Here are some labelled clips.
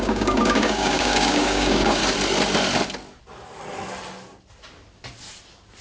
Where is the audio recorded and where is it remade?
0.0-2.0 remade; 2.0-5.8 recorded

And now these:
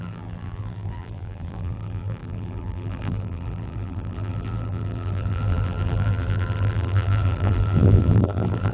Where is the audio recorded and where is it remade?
0.0-8.7 remade